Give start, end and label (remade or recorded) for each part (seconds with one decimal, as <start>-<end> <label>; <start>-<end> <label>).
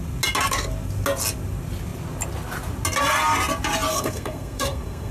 0.0-3.9 recorded; 3.9-5.1 remade